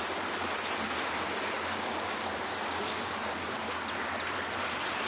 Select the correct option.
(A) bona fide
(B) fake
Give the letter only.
A